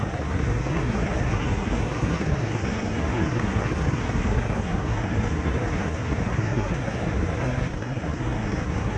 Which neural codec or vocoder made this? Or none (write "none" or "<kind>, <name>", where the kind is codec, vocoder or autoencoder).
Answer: codec, SNAC